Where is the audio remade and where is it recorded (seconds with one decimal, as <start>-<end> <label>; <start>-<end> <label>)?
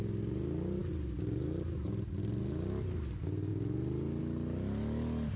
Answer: 0.0-5.4 recorded